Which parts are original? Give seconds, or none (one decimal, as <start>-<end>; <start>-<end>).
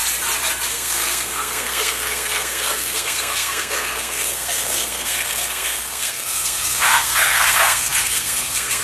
0.0-0.7